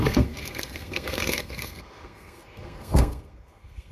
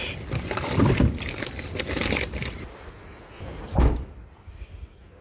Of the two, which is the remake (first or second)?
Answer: first